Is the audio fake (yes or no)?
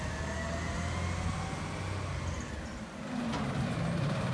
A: no